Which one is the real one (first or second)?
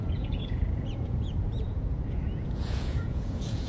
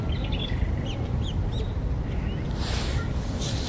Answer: second